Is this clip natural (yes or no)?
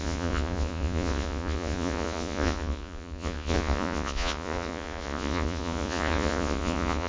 no